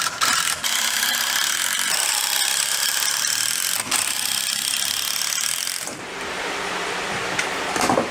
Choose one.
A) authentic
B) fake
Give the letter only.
B